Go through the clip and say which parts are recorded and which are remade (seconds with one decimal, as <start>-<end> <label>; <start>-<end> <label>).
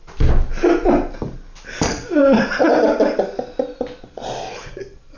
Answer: 0.0-5.2 recorded